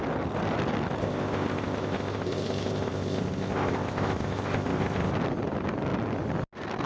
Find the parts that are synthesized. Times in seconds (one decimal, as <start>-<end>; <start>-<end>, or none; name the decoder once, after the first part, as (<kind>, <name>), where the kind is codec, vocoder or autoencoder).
1.0-5.1 (codec, ZipCodec)